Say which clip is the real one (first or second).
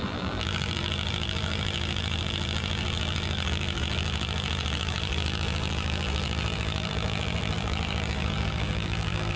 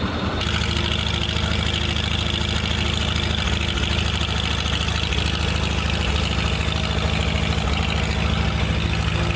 second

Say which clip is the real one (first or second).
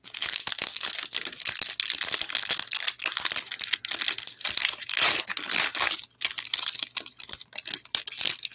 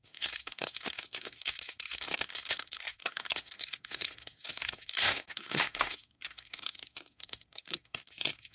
first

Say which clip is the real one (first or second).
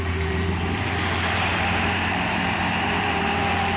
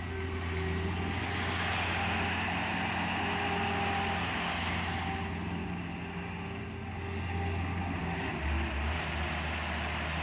second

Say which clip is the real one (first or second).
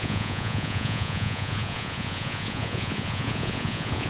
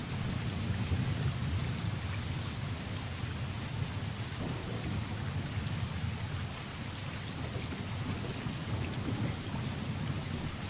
second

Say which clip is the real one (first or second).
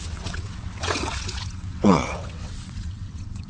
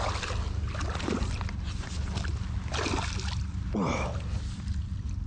second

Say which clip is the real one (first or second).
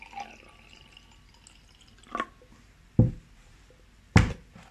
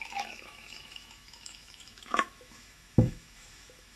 first